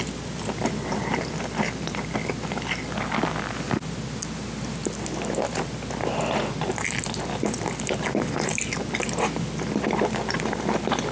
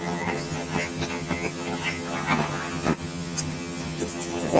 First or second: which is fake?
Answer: second